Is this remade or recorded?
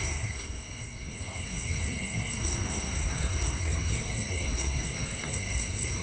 remade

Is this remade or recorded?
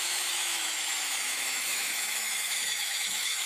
remade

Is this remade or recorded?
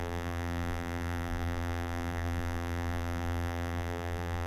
remade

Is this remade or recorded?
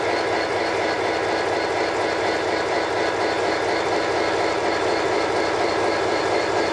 remade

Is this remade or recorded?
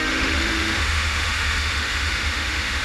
remade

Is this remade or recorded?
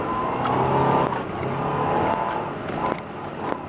recorded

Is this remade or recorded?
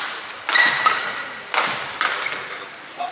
recorded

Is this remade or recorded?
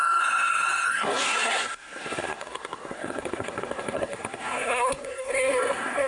remade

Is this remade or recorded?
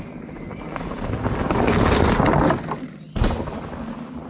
recorded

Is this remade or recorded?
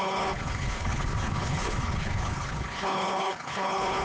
remade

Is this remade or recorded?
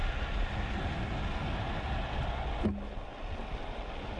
recorded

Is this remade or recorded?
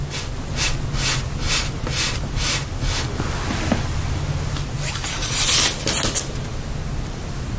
recorded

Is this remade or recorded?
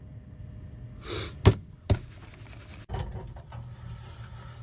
recorded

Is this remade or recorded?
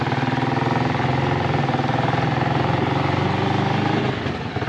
recorded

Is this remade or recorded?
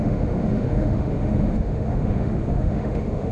remade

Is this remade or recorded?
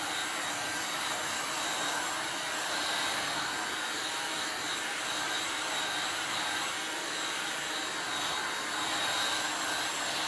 recorded